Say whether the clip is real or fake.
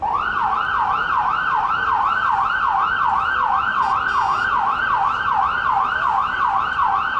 real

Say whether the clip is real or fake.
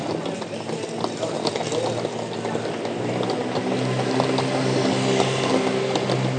real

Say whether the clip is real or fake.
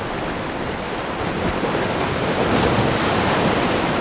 real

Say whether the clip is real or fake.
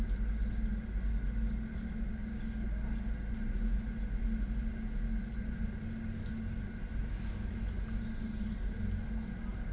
real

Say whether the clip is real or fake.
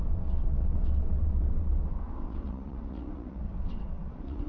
fake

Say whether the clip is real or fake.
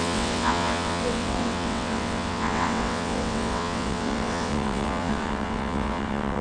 fake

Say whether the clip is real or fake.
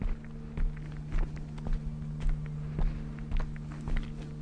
real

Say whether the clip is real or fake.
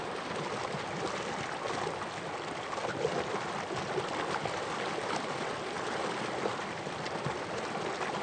real